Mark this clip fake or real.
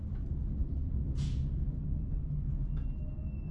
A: real